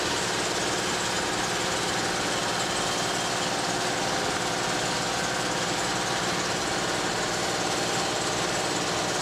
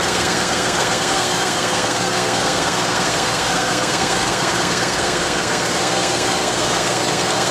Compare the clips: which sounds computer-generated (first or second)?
second